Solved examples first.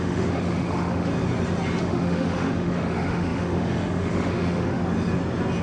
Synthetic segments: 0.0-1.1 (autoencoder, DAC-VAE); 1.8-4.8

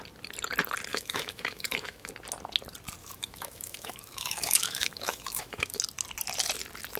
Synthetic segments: 0.9-2.1 (autoencoder, DAC-VAE); 3.0-5.8